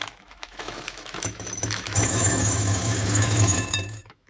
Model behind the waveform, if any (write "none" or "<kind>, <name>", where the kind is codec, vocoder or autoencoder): autoencoder, DAC-VAE